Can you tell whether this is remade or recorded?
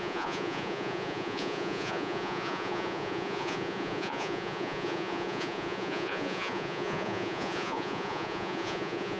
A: remade